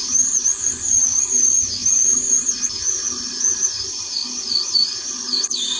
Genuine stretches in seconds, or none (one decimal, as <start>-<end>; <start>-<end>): 0.0-5.8